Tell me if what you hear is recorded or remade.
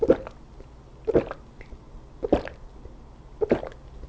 recorded